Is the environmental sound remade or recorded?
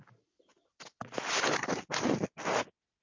recorded